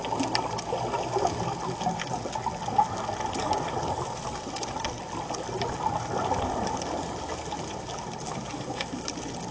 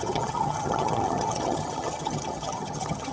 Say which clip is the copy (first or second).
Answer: second